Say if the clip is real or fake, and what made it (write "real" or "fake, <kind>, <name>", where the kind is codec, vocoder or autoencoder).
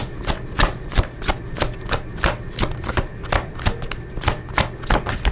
real